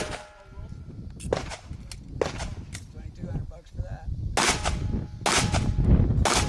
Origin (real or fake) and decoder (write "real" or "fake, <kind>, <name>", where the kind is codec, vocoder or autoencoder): real